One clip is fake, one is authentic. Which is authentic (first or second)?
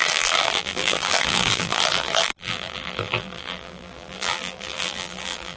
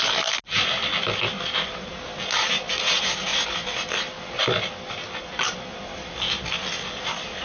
second